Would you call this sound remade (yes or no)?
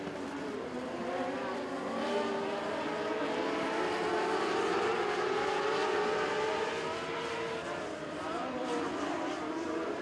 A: yes